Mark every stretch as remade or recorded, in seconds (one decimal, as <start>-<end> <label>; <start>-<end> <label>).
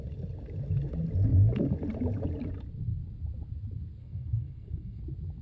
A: 0.0-4.0 recorded; 4.0-5.0 remade; 5.0-5.4 recorded